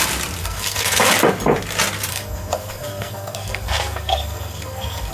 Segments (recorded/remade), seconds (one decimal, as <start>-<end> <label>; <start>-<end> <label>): 0.0-0.4 recorded; 0.4-1.1 remade; 1.1-2.1 recorded; 2.1-5.1 remade